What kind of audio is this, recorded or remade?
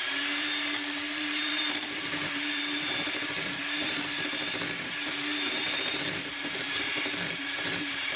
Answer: remade